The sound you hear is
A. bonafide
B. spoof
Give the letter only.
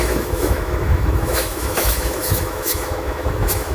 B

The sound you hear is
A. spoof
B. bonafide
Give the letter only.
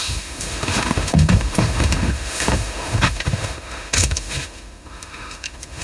A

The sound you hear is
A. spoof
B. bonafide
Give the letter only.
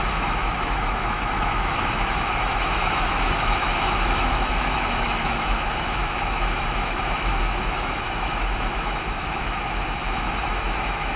A